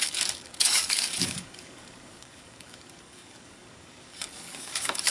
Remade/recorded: remade